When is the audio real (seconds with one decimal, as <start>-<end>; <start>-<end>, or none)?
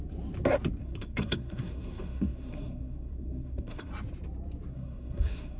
0.0-0.8; 3.9-4.7